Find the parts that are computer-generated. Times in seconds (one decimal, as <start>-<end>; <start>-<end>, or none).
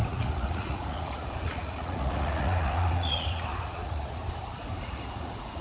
0.0-4.2; 4.8-5.6